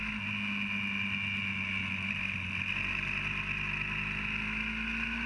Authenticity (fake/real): real